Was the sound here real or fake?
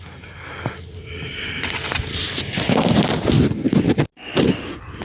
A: real